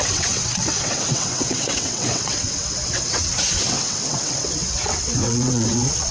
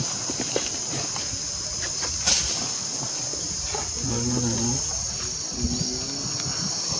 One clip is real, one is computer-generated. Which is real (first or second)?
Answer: second